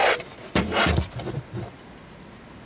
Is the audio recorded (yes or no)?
yes